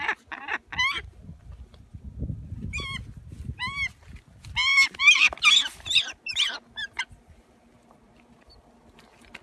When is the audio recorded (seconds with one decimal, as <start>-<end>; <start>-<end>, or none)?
0.0-9.4